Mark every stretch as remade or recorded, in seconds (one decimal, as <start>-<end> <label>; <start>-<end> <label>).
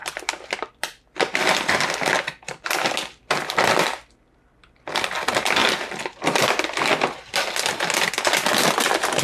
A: 0.0-3.5 remade; 3.5-9.2 recorded